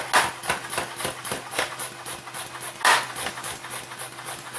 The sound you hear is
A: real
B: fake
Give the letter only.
A